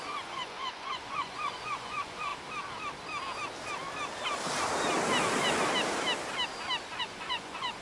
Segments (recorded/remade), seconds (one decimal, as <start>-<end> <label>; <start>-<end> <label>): 0.0-2.3 remade; 2.3-7.0 recorded; 7.0-7.8 remade